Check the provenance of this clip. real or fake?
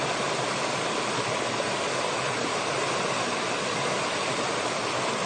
real